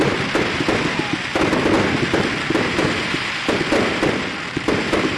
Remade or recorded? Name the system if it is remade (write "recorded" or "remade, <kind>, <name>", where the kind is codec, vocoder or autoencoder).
recorded